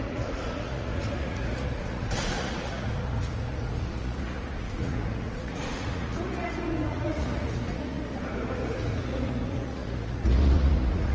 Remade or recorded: remade